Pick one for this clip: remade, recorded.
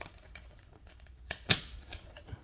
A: remade